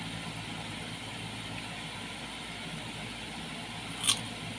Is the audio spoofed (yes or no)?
no